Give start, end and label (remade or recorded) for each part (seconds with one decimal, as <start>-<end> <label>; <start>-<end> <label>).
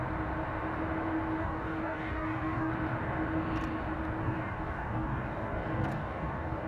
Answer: 0.0-1.4 recorded; 1.4-2.7 remade; 2.7-4.2 recorded; 4.2-6.7 remade